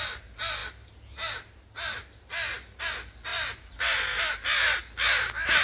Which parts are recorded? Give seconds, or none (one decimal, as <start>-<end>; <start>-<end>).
0.0-5.6

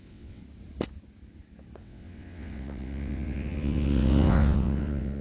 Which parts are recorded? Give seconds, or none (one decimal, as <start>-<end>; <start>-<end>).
0.4-1.8